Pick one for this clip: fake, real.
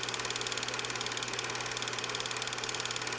real